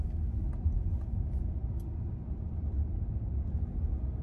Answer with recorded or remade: recorded